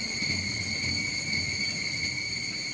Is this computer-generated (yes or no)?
no